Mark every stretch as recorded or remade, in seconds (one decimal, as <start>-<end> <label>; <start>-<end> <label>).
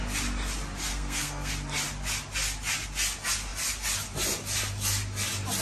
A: 0.0-0.9 recorded; 0.9-1.5 remade; 1.5-5.6 recorded